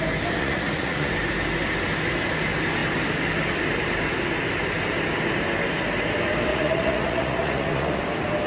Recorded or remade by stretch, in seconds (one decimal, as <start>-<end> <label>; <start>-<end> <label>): 0.0-0.4 recorded; 0.4-1.1 remade; 1.1-6.5 recorded; 6.5-8.0 remade; 8.0-8.5 recorded